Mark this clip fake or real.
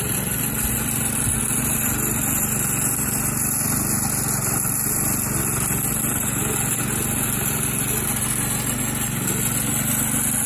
real